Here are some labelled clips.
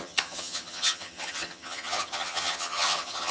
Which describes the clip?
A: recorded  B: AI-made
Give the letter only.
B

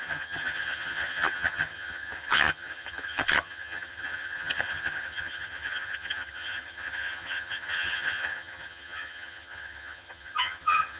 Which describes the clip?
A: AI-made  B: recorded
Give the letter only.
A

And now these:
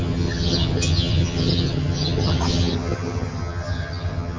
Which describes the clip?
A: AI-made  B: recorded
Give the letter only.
A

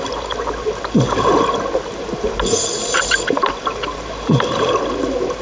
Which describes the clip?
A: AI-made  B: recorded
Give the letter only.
B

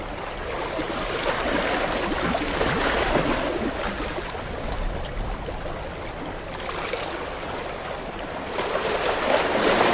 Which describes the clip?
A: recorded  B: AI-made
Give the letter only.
A